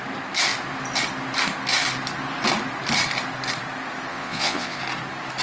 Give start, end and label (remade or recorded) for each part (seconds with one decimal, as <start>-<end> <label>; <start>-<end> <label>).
0.0-4.1 recorded; 4.1-4.8 remade; 4.8-5.4 recorded